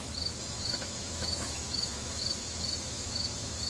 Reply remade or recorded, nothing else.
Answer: remade